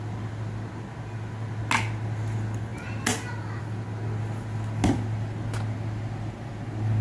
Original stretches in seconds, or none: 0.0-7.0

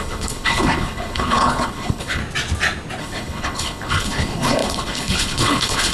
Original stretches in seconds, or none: 2.2-3.0